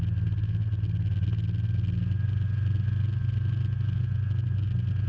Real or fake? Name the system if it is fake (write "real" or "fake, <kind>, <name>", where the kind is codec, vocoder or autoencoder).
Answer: real